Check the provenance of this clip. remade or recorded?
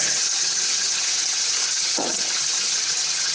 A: remade